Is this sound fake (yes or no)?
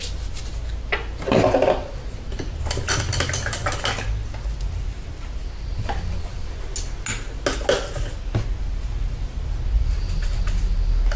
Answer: no